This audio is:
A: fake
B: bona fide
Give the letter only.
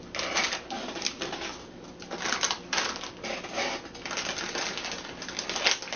B